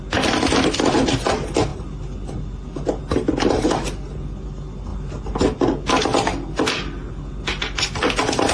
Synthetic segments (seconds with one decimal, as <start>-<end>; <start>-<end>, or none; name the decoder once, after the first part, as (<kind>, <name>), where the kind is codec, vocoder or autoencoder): none